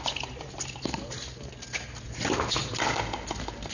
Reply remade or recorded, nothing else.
recorded